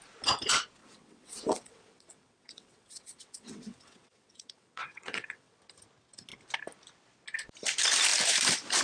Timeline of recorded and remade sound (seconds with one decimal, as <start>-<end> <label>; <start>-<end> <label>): 0.0-0.8 recorded; 0.8-5.6 remade; 5.6-8.8 recorded